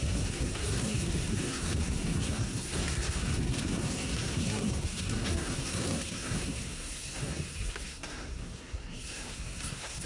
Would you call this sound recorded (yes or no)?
no